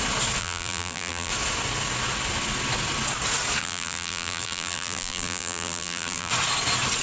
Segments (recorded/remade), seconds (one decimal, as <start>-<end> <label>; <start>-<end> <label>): 0.0-0.4 recorded; 0.4-1.3 remade; 1.3-3.6 recorded; 3.6-6.3 remade; 6.3-7.0 recorded